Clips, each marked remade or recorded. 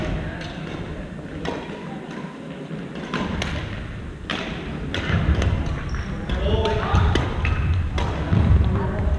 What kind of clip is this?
recorded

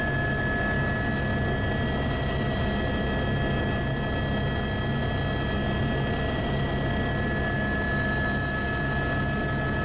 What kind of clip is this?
recorded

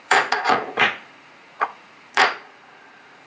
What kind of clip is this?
remade